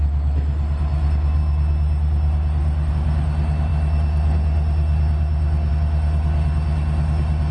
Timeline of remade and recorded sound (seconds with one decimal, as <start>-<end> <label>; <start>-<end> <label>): 0.0-7.5 recorded